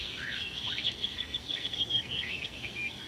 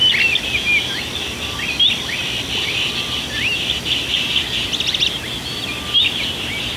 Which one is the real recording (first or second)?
second